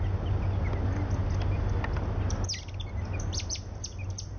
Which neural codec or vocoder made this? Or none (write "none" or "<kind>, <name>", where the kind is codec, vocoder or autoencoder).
none